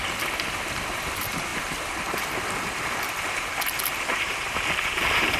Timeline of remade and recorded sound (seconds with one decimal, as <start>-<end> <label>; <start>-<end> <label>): 0.0-5.4 remade